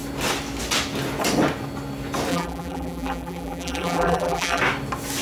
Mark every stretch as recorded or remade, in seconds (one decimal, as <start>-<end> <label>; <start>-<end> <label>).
0.0-2.3 recorded; 2.3-4.6 remade; 4.6-5.2 recorded